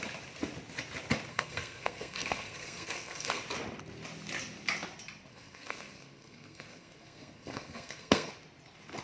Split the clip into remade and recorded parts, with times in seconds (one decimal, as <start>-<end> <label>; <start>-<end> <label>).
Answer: 0.0-1.3 recorded; 1.3-3.4 remade; 3.4-5.3 recorded; 5.3-8.3 remade; 8.3-9.0 recorded